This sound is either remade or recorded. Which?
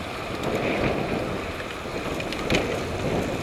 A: recorded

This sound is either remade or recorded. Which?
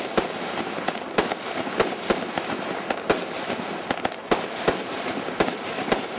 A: remade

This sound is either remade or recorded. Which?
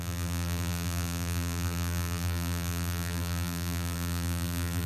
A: remade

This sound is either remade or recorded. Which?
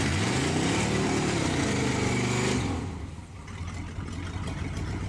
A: remade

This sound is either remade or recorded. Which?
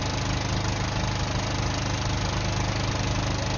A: recorded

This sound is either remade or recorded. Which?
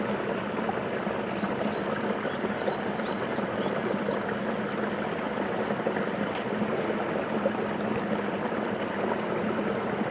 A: recorded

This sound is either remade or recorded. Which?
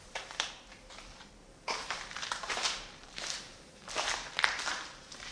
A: remade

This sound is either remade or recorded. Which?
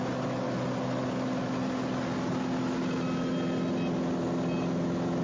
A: recorded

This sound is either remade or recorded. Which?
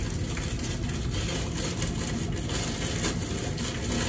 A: recorded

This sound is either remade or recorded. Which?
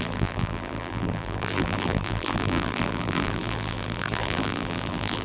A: remade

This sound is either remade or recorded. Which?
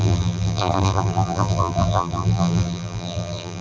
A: remade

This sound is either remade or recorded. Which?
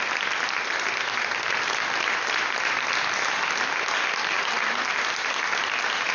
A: recorded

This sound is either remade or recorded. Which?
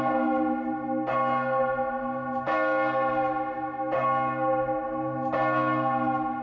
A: recorded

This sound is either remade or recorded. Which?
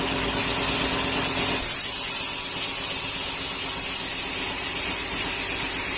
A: recorded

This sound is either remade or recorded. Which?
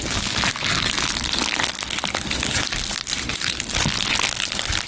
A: recorded